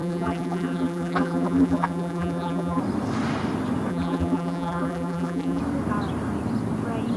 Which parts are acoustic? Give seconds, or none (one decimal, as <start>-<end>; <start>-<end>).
2.8-3.9; 5.6-7.2